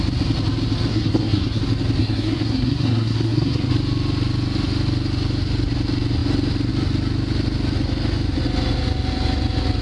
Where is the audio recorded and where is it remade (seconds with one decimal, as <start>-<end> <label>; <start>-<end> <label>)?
0.0-0.9 recorded; 0.9-1.6 remade; 1.6-2.0 recorded; 2.0-3.7 remade; 3.7-9.8 recorded